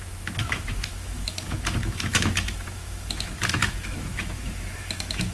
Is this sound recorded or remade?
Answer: remade